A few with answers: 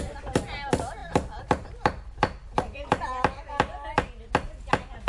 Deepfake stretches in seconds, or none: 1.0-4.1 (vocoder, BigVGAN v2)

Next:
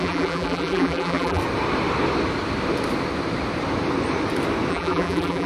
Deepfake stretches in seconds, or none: 0.0-1.4 (vocoder, BigVGAN v2); 4.7-5.5